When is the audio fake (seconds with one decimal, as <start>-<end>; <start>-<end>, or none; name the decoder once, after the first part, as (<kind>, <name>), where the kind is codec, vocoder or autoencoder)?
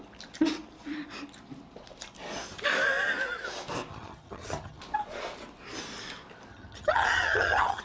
3.9-4.8 (vocoder, HiFi-GAN); 6.5-7.8